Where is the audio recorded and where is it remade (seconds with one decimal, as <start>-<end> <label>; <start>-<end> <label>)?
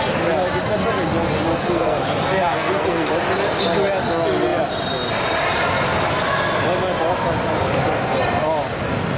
0.0-1.5 recorded; 1.5-3.1 remade; 3.1-9.2 recorded